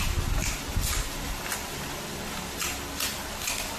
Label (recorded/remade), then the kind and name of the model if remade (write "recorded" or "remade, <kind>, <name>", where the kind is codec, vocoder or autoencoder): recorded